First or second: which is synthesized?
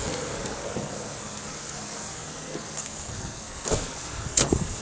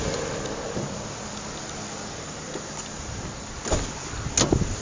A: first